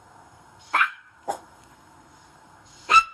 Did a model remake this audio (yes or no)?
yes